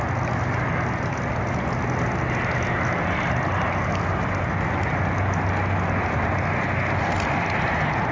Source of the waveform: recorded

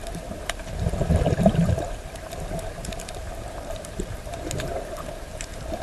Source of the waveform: remade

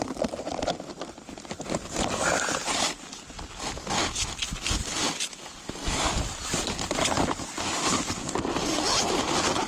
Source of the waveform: recorded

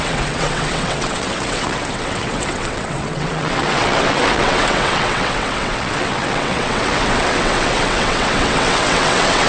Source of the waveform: remade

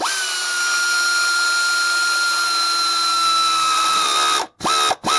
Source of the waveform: recorded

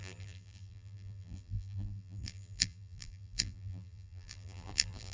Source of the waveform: remade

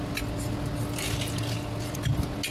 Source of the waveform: recorded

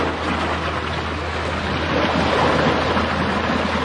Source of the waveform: recorded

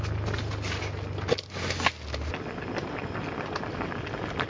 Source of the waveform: recorded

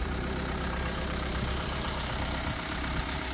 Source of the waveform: remade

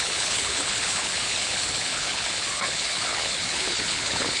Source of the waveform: remade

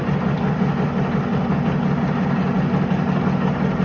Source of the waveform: recorded